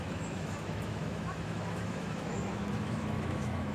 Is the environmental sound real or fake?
fake